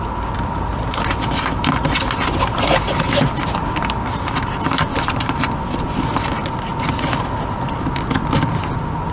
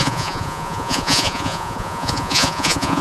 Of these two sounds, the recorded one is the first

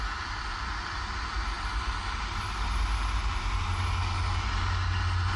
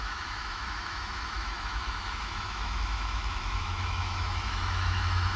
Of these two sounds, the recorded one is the first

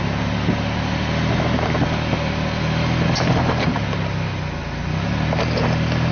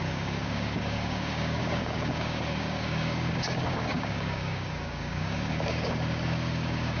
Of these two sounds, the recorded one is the first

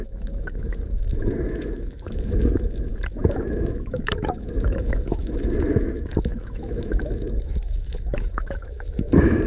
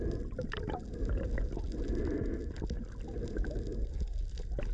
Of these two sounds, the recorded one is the second